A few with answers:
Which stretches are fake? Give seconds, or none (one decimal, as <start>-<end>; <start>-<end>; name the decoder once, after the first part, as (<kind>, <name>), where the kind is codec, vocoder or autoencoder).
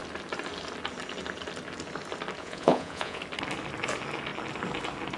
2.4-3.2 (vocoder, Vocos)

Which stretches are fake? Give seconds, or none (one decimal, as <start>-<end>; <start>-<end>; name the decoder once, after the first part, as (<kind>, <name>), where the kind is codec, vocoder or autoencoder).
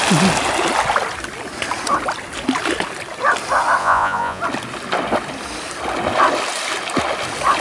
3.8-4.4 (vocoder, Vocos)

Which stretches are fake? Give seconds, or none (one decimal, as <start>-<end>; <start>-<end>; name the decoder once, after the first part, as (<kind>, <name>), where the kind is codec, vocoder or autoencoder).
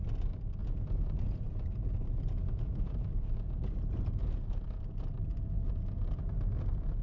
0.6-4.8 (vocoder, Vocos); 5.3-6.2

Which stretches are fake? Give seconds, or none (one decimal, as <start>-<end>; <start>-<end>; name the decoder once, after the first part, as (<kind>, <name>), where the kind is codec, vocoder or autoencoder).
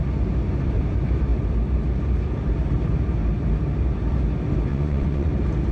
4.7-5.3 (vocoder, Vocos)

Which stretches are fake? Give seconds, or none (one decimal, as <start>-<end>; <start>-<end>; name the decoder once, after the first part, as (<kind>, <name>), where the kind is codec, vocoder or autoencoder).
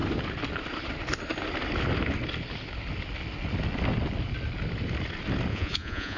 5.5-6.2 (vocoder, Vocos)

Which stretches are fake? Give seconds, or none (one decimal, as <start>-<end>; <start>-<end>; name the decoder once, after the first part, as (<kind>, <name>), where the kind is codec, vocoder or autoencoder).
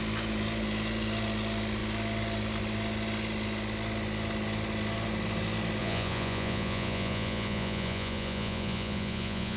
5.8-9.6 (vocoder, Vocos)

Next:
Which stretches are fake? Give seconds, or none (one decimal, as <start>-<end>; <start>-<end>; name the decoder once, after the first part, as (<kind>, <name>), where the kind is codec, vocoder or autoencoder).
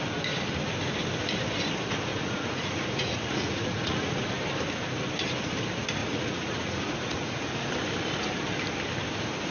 2.1-4.2 (vocoder, Vocos); 6.0-7.7